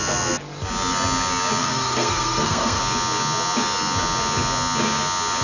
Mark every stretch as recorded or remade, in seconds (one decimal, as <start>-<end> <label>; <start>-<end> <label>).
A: 0.0-1.6 recorded; 1.6-2.8 remade; 2.8-5.4 recorded